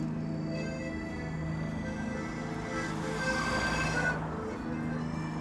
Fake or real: real